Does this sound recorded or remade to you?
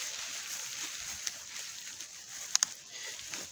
recorded